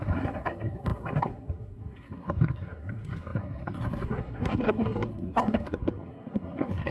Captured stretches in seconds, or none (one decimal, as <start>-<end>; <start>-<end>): none